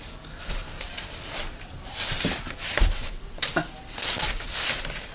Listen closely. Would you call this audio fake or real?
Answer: real